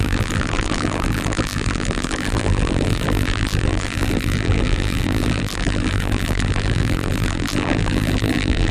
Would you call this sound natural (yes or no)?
no